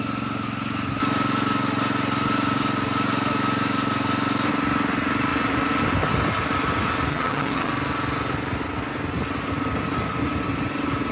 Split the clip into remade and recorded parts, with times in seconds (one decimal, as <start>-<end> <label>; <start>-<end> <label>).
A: 0.0-7.1 recorded; 7.1-7.7 remade; 7.7-11.1 recorded